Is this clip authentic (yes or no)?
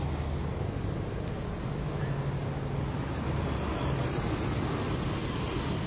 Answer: yes